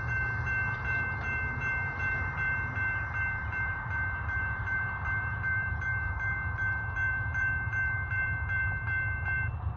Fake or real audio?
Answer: fake